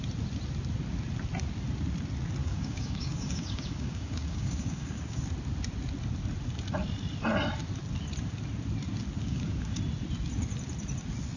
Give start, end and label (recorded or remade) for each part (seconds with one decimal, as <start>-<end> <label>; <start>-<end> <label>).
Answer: 0.0-2.4 recorded; 2.4-5.2 remade; 5.2-9.2 recorded; 9.2-9.8 remade; 9.8-11.4 recorded